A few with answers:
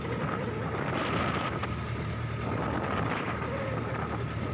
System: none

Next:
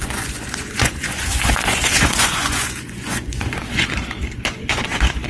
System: vocoder, Vocos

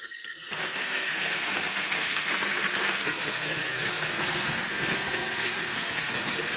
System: codec, SNAC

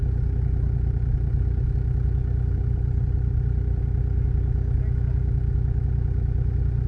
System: none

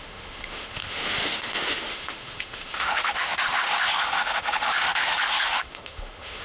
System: autoencoder, DAC-VAE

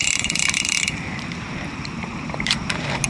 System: vocoder, BigVGAN v2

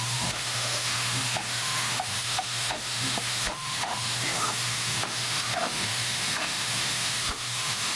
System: autoencoder, DAC-VAE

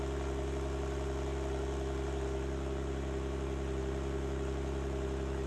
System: none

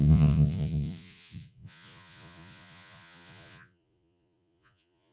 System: vocoder, Vocos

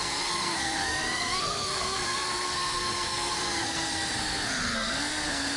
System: codec, SNAC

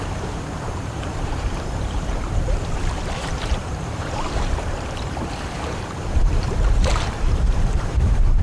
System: vocoder, BigVGAN v2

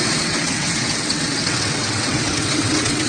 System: vocoder, WaveNeXt